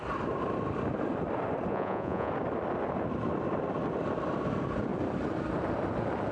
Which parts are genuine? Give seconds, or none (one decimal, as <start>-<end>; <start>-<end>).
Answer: 0.0-1.7; 2.3-6.3